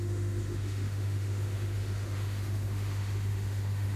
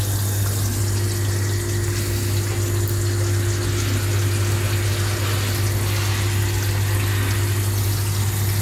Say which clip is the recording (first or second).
second